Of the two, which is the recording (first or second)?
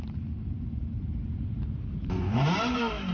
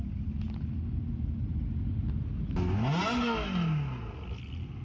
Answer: second